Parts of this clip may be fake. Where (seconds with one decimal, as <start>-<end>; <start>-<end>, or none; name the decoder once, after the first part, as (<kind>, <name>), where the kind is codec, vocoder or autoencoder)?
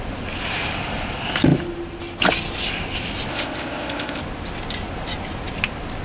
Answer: 3.3-4.2 (codec, ZipCodec)